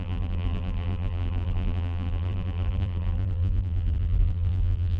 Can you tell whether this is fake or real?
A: fake